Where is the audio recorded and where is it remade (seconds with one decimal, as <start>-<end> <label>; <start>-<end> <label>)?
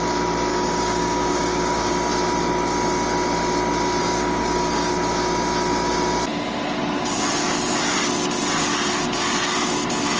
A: 0.0-0.5 recorded; 0.5-1.9 remade; 1.9-4.0 recorded; 4.0-4.9 remade; 4.9-10.2 recorded